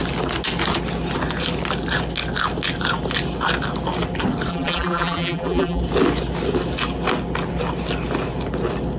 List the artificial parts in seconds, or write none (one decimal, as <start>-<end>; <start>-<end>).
4.5-5.8